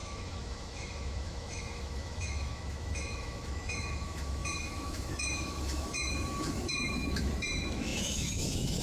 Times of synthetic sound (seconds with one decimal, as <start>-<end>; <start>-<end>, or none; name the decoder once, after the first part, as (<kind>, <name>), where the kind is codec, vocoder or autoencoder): 0.0-8.8 (autoencoder, DAC-VAE)

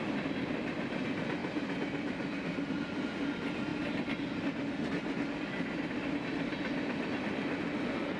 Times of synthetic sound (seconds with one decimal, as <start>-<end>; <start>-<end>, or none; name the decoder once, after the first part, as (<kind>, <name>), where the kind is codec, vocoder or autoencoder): none